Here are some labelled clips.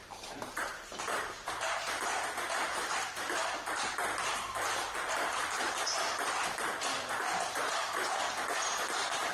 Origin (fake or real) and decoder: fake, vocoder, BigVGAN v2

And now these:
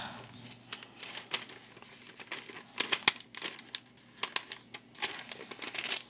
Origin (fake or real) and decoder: real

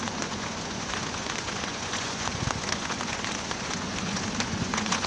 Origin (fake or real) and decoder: fake, vocoder, Vocos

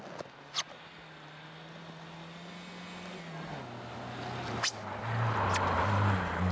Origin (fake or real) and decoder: real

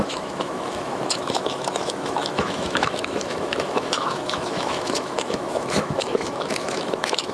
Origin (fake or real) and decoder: fake, autoencoder, DAC-VAE